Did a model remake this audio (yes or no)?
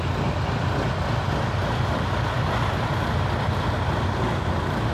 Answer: no